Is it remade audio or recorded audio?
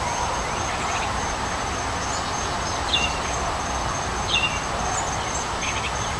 recorded